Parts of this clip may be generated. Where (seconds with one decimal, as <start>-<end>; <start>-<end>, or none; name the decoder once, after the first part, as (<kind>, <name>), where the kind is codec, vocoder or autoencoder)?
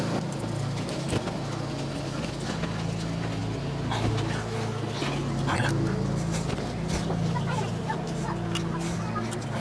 none